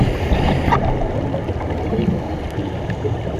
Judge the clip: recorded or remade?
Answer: recorded